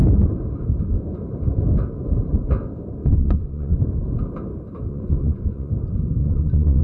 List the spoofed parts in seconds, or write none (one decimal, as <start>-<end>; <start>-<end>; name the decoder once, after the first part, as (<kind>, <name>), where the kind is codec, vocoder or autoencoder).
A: 3.0-3.8 (vocoder, Vocos); 4.9-5.7; 6.2-6.8